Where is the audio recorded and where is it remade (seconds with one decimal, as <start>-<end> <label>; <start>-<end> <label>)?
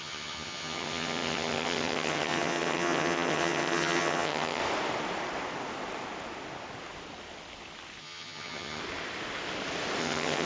0.0-4.6 remade; 4.6-8.0 recorded; 8.0-8.8 remade; 8.8-10.0 recorded; 10.0-10.5 remade